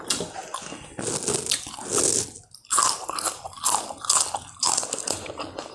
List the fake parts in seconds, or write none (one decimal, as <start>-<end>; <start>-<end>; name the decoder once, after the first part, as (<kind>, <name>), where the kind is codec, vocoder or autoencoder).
none